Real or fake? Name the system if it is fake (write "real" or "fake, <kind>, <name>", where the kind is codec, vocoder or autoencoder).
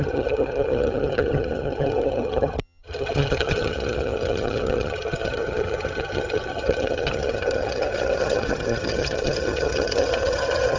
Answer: fake, vocoder, HiFi-GAN